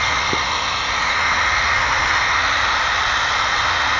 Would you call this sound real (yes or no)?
yes